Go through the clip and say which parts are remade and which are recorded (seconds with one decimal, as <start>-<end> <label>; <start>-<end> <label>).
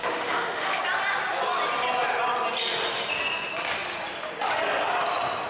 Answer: 0.0-0.8 remade; 0.8-5.5 recorded